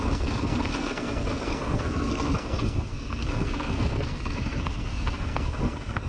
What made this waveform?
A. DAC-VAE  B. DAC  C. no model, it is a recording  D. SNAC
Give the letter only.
D